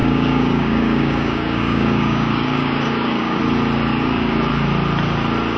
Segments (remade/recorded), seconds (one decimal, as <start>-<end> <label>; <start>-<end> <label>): 0.0-3.4 remade; 3.4-3.9 recorded; 3.9-4.5 remade; 4.5-5.6 recorded